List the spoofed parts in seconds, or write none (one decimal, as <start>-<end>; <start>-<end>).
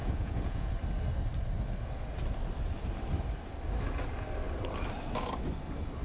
0.0-0.7